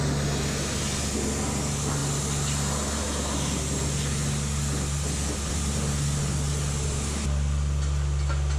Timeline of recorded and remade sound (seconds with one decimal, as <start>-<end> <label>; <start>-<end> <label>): 0.0-8.6 recorded